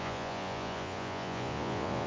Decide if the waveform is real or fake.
fake